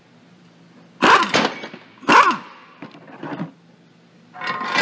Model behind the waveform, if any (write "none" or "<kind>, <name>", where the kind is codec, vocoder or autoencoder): none